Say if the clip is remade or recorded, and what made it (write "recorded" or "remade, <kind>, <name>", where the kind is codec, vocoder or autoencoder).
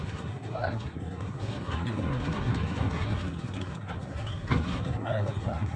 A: remade, codec, SNAC